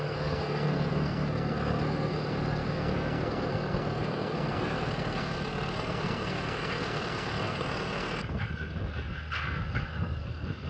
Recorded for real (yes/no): no